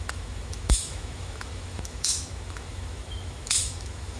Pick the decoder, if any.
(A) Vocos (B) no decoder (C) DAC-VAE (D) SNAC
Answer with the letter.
C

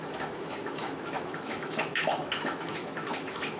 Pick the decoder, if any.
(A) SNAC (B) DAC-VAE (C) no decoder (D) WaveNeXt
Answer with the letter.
B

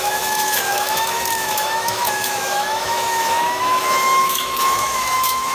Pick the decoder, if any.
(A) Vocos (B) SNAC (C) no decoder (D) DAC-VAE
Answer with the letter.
D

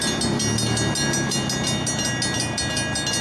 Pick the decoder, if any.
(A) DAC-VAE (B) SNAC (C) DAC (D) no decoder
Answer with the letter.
D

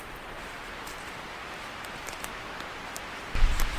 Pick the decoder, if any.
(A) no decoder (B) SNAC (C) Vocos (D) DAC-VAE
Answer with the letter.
A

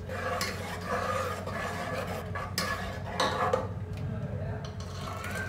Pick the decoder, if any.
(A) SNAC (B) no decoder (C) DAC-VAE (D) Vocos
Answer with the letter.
B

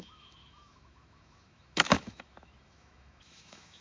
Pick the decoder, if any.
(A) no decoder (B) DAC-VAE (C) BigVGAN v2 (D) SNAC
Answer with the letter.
B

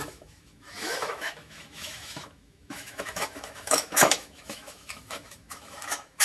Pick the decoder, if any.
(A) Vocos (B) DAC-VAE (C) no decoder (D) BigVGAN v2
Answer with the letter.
B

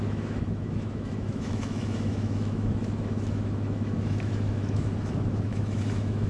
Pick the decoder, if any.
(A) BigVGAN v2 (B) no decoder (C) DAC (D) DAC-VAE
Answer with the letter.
D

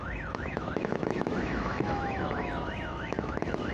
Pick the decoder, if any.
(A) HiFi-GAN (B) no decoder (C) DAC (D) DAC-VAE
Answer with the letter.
D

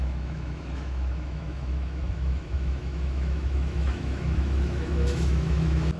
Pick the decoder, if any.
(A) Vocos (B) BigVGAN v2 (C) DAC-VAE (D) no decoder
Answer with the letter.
C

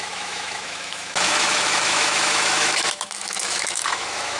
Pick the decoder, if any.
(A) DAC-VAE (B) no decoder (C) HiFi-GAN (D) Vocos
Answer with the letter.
A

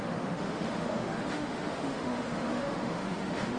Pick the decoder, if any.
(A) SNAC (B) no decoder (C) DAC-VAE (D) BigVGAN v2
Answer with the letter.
C